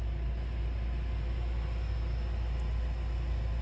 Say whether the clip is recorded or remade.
recorded